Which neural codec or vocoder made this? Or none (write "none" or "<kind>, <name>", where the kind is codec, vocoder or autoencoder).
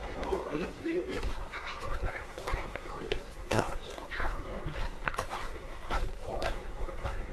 codec, SNAC